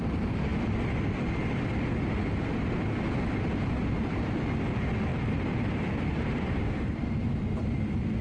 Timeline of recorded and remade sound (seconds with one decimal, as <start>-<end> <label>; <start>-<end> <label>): 0.0-5.1 recorded; 5.1-7.2 remade; 7.2-8.2 recorded